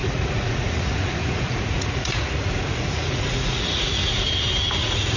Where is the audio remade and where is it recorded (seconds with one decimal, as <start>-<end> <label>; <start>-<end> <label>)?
0.0-4.0 remade; 4.0-4.7 recorded; 4.7-5.2 remade